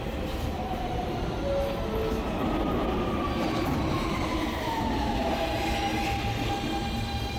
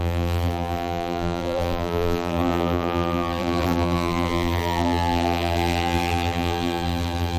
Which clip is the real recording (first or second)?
first